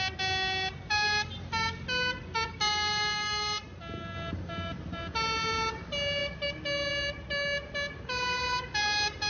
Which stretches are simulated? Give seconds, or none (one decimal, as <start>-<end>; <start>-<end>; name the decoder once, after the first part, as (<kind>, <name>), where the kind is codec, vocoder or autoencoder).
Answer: none